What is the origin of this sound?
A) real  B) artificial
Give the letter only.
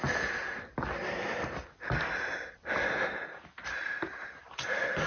A